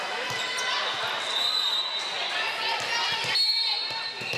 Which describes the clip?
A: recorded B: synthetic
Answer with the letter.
A